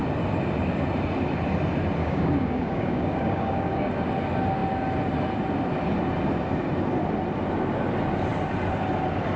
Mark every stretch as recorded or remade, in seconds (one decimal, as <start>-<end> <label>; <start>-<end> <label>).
0.0-2.0 recorded; 2.0-3.9 remade; 3.9-9.4 recorded